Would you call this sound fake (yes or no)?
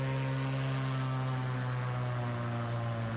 no